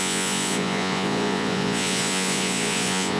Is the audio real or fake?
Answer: fake